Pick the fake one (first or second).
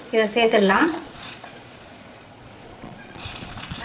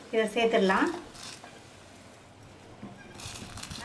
first